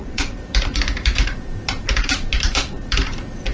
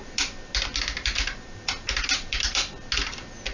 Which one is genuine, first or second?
second